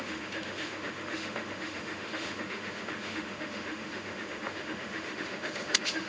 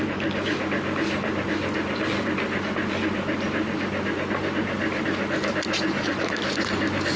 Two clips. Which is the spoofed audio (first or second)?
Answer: first